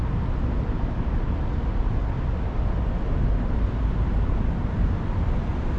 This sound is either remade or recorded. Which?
recorded